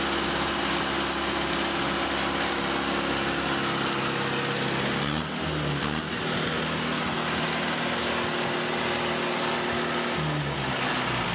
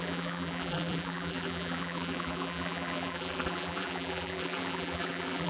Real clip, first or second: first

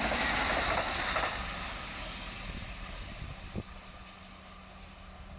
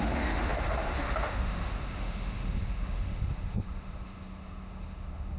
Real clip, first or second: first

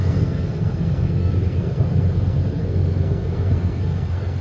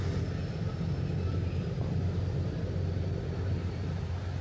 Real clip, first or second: second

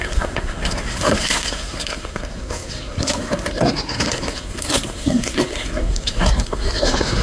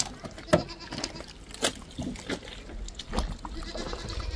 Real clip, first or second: second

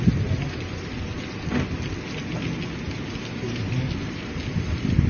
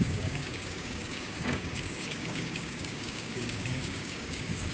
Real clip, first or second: first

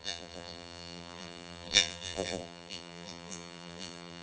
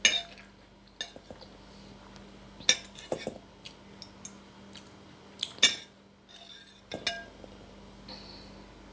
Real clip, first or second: second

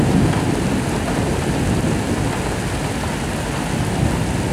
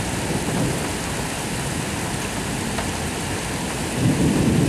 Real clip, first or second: first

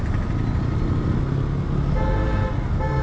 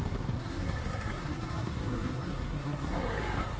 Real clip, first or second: first